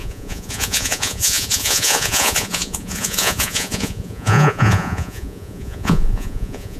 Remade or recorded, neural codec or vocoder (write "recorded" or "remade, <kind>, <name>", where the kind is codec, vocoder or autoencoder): remade, vocoder, Vocos